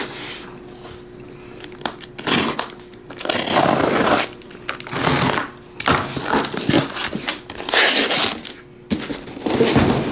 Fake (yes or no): no